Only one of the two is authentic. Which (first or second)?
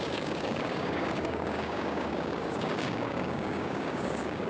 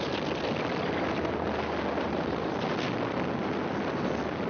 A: second